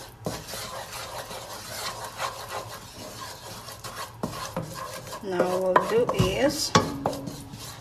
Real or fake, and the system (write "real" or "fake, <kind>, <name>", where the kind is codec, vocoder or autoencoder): fake, vocoder, BigVGAN v2